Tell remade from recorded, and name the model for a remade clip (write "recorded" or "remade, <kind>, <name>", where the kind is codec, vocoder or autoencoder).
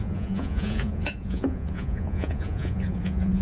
remade, vocoder, Vocos